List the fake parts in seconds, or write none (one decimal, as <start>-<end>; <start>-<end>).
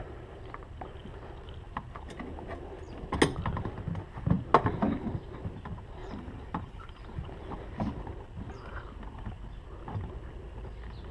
6.0-7.3